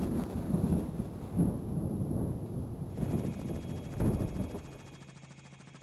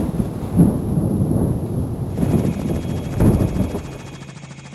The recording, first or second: first